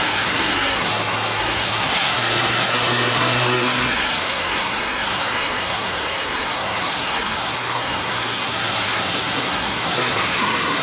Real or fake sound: fake